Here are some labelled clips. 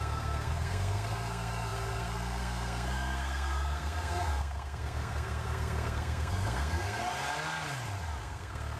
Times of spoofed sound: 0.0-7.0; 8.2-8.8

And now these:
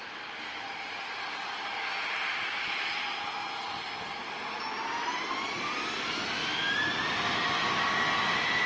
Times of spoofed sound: none

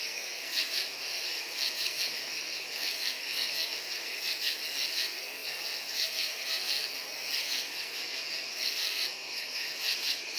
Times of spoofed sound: 0.0-10.4

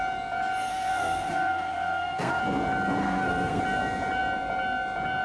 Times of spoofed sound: 0.7-2.4; 3.0-3.6

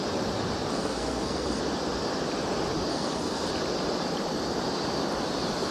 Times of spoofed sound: 0.7-1.6; 2.9-3.5

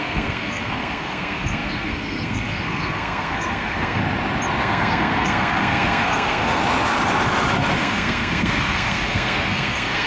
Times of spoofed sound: 0.0-4.0; 4.6-6.6; 7.8-10.1